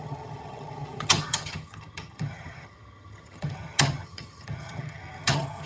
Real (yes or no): no